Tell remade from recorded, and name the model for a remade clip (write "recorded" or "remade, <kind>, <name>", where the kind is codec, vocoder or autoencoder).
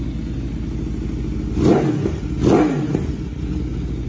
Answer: recorded